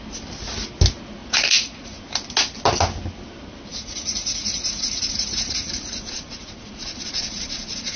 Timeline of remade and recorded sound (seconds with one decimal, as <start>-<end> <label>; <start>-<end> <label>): 0.0-1.2 recorded; 1.2-2.0 remade; 2.0-3.7 recorded; 3.7-8.0 remade